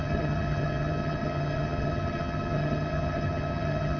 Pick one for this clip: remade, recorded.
remade